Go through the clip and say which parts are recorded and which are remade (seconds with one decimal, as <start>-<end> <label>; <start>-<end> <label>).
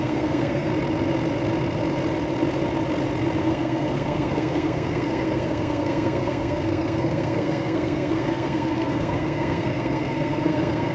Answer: 0.0-0.7 remade; 0.7-3.4 recorded; 3.4-10.9 remade